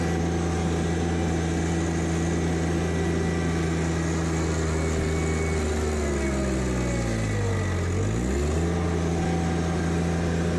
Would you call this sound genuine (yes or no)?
yes